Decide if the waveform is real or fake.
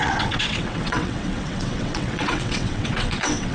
fake